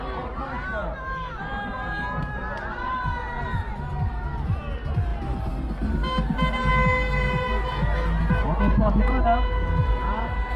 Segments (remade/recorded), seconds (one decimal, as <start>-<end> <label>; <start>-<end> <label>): 0.0-10.6 recorded

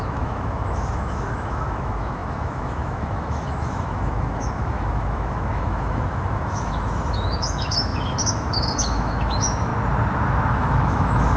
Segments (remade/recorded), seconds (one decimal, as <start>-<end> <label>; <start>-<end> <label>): 0.0-9.7 remade; 9.7-10.5 recorded; 10.5-11.4 remade

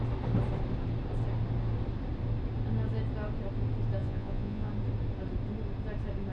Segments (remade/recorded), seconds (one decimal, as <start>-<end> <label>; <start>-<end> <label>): 0.0-4.0 recorded; 4.0-4.7 remade; 4.7-6.3 recorded

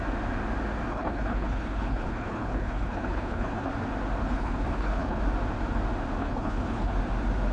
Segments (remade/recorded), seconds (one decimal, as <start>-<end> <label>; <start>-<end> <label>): 0.0-0.9 recorded; 0.9-3.7 remade; 3.7-4.2 recorded; 4.2-5.2 remade; 5.2-6.2 recorded; 6.2-6.9 remade; 6.9-7.5 recorded

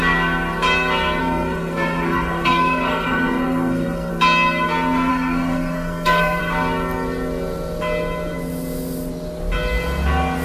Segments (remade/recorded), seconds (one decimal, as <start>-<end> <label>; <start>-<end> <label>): 0.0-1.2 recorded; 1.2-4.1 remade; 4.1-5.1 recorded; 5.1-6.4 remade; 6.4-10.4 recorded